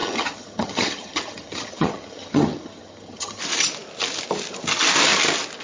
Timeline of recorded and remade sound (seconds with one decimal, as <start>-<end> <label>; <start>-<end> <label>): 0.0-3.4 remade; 3.4-5.6 recorded